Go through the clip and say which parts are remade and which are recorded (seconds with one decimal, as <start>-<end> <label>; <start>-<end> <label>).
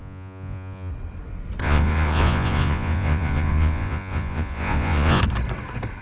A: 0.0-0.9 remade; 0.9-1.6 recorded; 1.6-5.2 remade; 5.2-6.0 recorded